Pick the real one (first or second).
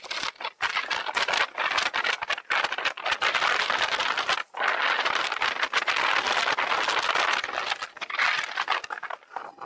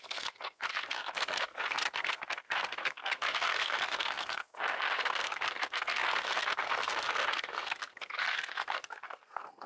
first